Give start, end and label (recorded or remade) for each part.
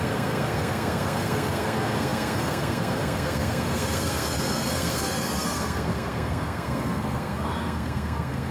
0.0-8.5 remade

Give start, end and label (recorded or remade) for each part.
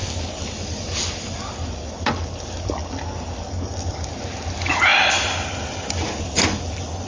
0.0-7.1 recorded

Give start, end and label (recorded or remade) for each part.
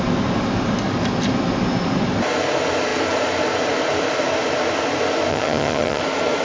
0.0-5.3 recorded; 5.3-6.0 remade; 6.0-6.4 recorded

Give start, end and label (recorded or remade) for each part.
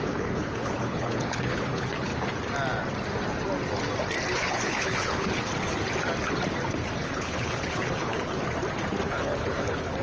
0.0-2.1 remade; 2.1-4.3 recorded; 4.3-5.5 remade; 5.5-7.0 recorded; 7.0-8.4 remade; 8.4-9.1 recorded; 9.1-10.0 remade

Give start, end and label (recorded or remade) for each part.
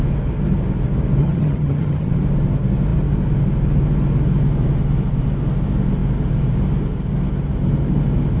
0.0-1.2 recorded; 1.2-2.1 remade; 2.1-8.4 recorded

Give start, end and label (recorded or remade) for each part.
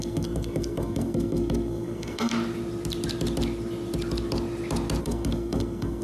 0.0-2.3 remade; 2.3-5.0 recorded; 5.0-6.0 remade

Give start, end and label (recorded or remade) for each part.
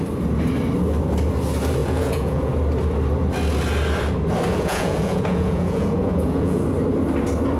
0.0-1.8 recorded; 1.8-2.5 remade; 2.5-4.5 recorded; 4.5-6.6 remade; 6.6-7.6 recorded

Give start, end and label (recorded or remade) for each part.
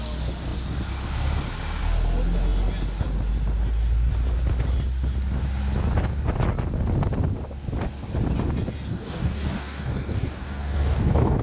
0.0-8.9 recorded; 8.9-11.4 remade